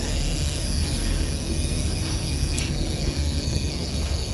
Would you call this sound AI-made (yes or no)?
yes